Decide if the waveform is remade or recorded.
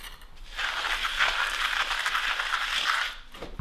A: recorded